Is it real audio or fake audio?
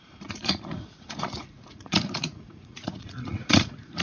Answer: fake